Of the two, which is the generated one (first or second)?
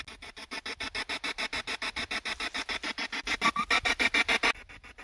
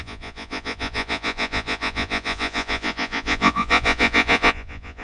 second